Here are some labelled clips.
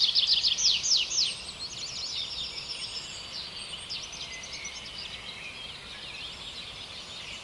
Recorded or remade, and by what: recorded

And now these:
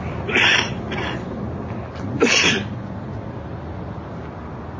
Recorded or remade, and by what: recorded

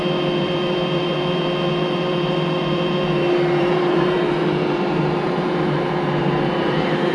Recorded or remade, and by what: remade, vocoder, BigVGAN v2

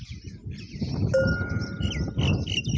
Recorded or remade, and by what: recorded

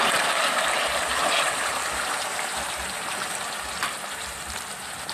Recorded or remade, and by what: remade, vocoder, BigVGAN v2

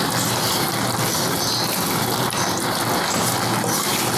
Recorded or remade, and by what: remade, vocoder, BigVGAN v2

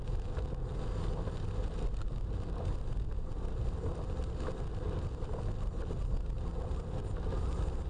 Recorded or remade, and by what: recorded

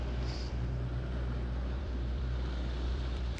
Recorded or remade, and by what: remade, vocoder, BigVGAN v2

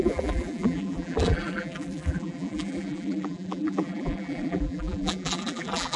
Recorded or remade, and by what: remade, vocoder, BigVGAN v2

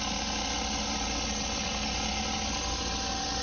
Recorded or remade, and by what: recorded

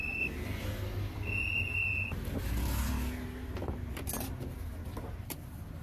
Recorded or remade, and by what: recorded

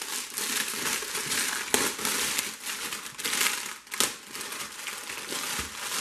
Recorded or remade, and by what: recorded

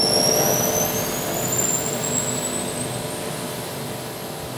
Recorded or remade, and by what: recorded